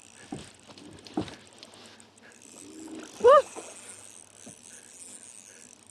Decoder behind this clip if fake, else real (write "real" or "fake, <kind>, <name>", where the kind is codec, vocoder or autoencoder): real